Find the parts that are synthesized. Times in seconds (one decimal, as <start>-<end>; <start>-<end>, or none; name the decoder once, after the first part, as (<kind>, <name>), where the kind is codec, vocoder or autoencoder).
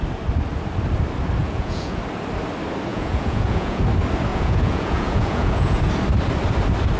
1.4-2.0 (vocoder, Vocos); 2.9-3.8; 4.3-5.8